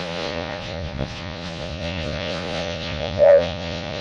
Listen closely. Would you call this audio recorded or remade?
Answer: remade